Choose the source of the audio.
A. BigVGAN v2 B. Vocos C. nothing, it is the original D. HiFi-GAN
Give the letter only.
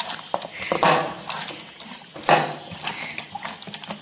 C